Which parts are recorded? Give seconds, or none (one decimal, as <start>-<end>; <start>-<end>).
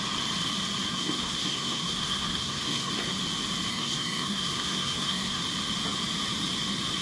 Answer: 0.0-0.9; 2.9-3.7; 5.4-7.0